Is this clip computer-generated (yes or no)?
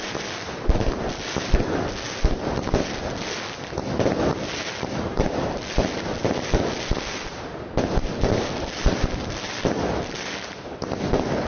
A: no